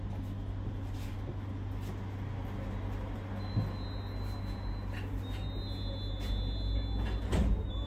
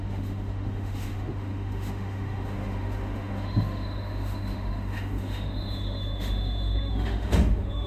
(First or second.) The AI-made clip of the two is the second